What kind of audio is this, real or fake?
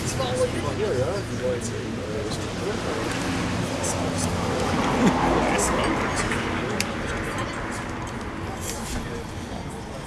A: real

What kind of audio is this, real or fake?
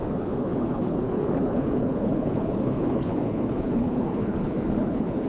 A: fake